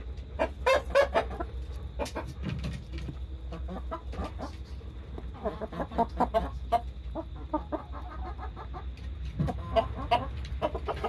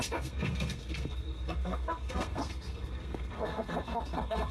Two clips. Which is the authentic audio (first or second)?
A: first